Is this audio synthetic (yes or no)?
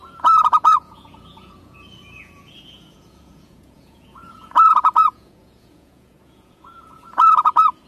yes